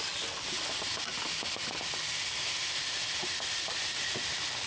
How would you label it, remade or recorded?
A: recorded